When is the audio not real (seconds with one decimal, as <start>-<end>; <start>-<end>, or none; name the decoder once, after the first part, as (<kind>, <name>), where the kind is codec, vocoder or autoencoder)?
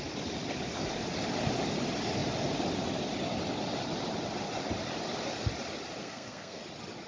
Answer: 6.0-6.6 (codec, SNAC)